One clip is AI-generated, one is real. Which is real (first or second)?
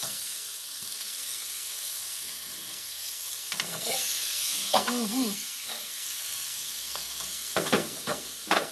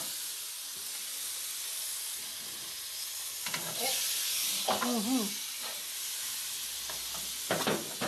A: second